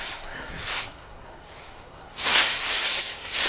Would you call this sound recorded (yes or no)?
no